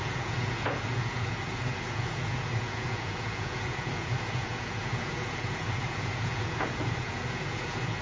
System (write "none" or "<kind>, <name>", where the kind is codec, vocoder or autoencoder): vocoder, Vocos